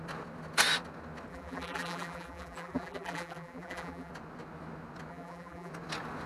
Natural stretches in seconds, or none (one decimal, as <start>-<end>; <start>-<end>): 0.0-1.3; 4.1-5.1; 5.7-6.3